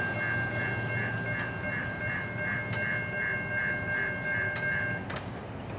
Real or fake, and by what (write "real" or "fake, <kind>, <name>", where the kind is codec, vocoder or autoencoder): real